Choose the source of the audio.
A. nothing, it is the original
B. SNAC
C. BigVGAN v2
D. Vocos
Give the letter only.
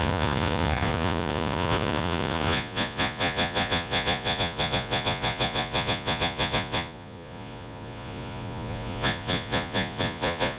D